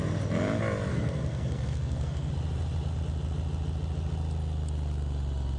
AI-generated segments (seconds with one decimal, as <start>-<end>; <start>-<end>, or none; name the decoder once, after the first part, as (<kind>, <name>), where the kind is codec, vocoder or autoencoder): 0.9-2.3 (codec, SNAC)